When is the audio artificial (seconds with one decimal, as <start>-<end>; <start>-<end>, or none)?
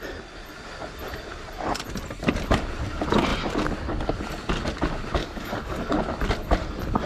5.2-5.9